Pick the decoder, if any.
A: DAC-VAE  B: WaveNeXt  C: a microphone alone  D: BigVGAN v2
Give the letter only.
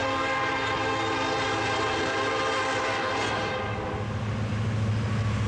C